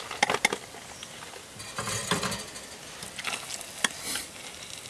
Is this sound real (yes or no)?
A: yes